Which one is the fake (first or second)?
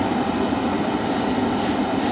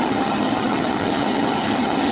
second